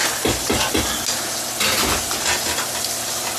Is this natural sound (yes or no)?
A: yes